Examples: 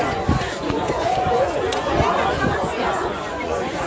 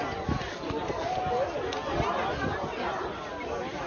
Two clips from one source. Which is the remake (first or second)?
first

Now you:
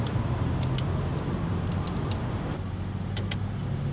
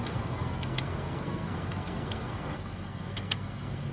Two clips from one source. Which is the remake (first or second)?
second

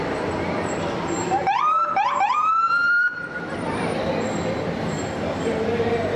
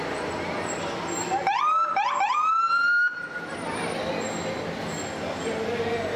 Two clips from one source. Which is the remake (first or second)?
first